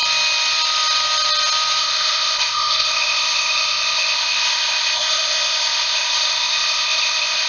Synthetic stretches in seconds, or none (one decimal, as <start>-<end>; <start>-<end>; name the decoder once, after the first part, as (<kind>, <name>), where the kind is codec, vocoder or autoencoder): 1.8-7.5 (codec, ZipCodec)